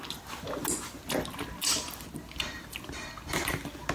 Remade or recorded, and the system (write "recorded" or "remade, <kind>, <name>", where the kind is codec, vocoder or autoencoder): recorded